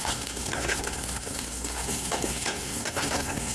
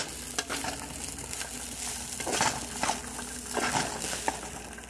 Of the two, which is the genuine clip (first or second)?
second